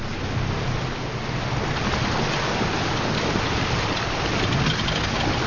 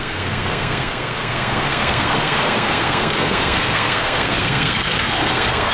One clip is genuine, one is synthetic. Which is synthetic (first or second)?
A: second